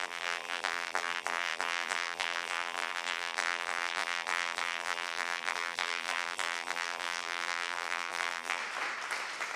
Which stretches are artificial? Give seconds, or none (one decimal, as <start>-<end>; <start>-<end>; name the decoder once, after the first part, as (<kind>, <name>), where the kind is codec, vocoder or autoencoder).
0.0-8.6 (vocoder, BigVGAN v2)